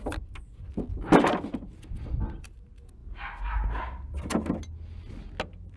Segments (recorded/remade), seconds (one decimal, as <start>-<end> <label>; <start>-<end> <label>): 0.0-5.8 recorded